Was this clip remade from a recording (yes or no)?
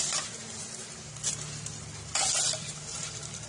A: no